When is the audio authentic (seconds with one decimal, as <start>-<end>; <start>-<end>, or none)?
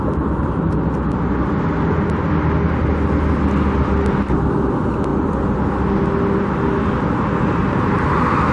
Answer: 0.0-8.5